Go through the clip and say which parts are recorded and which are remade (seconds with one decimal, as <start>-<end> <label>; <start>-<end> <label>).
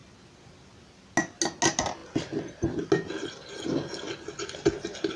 0.0-5.2 recorded